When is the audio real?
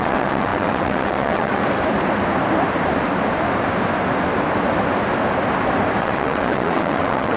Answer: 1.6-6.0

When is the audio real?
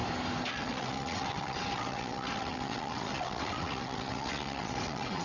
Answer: 0.0-0.5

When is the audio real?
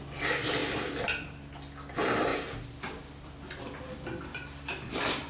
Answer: 0.0-5.3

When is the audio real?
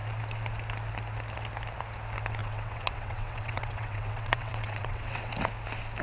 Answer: 0.0-2.4; 5.3-6.0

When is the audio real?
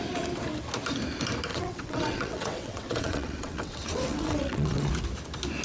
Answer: 0.0-1.5; 4.9-5.6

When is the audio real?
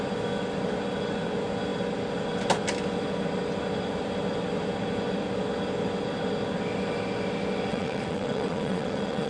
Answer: 0.0-7.7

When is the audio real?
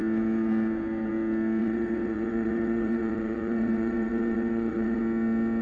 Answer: 0.0-1.6; 5.0-5.6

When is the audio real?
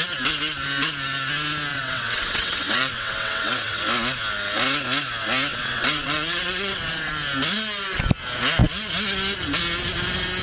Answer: 0.0-1.7; 3.8-5.5; 7.1-10.4